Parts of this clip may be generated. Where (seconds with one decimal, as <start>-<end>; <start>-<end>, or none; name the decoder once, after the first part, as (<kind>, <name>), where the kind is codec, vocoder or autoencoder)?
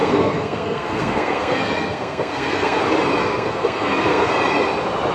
0.0-2.8 (codec, SNAC); 3.2-4.3